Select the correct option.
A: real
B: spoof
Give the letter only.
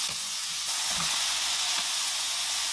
B